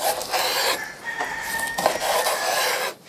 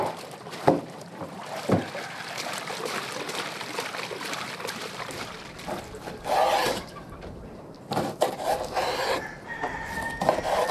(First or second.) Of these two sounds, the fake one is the second